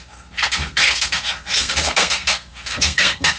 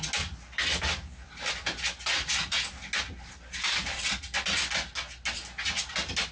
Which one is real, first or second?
second